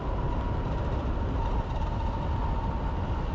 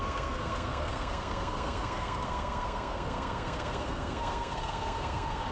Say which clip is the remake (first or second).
second